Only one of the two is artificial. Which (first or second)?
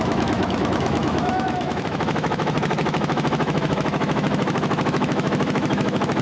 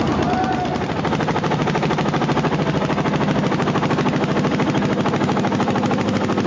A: first